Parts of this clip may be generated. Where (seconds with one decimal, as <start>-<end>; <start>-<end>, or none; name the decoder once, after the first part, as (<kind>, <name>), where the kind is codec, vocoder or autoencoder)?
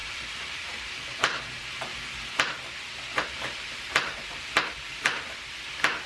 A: 0.0-1.6 (vocoder, BigVGAN v2); 3.1-3.8